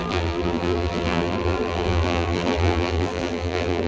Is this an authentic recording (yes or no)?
no